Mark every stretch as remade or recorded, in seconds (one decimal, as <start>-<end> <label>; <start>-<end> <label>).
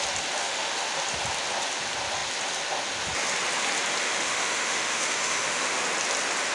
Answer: 0.0-0.4 recorded; 0.4-0.9 remade; 0.9-4.0 recorded; 4.0-5.8 remade; 5.8-6.5 recorded